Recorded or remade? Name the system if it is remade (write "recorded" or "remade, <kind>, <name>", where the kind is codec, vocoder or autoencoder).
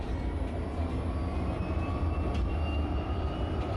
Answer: recorded